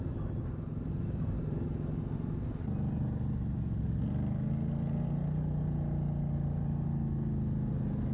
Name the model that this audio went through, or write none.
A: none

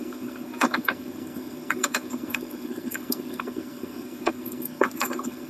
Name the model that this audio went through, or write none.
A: codec, SNAC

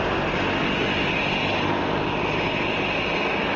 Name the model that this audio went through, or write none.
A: none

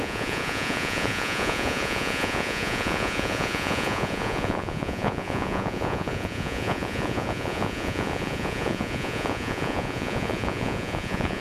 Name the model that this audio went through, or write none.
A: vocoder, Vocos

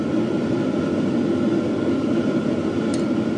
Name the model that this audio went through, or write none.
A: none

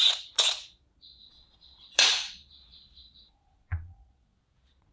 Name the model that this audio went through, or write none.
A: vocoder, Vocos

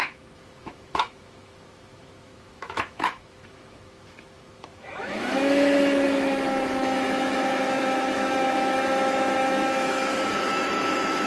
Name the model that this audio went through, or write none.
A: autoencoder, DAC-VAE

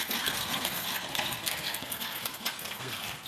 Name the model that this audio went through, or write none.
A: codec, SNAC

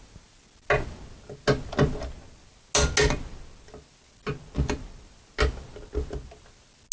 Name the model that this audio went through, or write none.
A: none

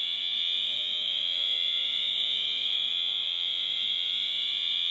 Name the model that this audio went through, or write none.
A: vocoder, Vocos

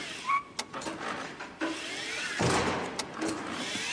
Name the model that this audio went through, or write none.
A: none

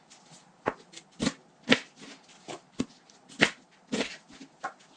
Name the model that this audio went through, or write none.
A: none